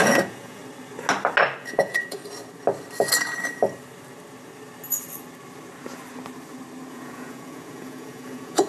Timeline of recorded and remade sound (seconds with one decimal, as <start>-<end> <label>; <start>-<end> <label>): 0.0-0.6 remade; 0.6-1.6 recorded; 1.6-2.2 remade; 2.2-6.9 recorded; 6.9-8.7 remade

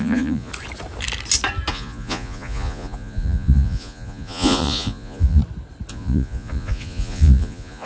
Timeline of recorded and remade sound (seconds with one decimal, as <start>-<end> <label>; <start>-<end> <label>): 0.0-0.5 remade; 0.5-1.7 recorded; 1.7-5.4 remade; 5.4-5.9 recorded; 5.9-7.9 remade

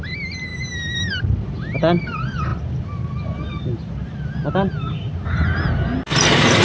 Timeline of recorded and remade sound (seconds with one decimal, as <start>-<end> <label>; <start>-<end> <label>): 0.0-6.6 recorded

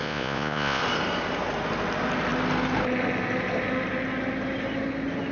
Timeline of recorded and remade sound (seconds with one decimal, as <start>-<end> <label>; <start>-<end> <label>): 0.0-0.8 remade; 0.8-5.3 recorded

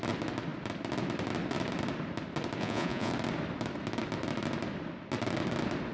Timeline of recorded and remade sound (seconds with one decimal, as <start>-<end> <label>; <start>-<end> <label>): 0.0-2.6 recorded; 2.6-3.1 remade; 3.1-5.9 recorded

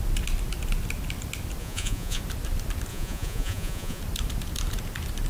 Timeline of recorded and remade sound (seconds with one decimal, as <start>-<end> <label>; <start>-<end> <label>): 0.0-1.6 recorded; 1.6-2.2 remade; 2.2-2.9 recorded; 2.9-4.0 remade; 4.0-5.3 recorded